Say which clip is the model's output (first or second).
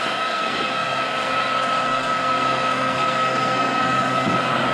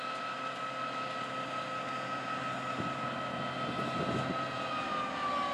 first